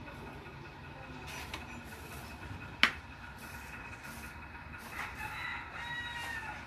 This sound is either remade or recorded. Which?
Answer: recorded